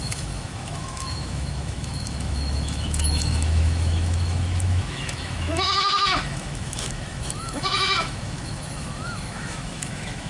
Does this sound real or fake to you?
fake